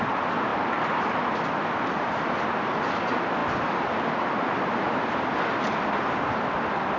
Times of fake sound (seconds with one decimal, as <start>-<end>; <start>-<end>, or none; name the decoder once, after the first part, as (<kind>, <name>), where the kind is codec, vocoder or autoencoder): none